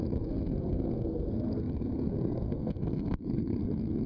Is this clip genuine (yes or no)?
no